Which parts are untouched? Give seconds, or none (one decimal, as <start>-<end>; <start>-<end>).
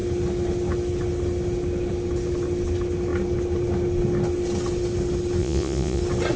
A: 0.0-5.4; 6.0-6.4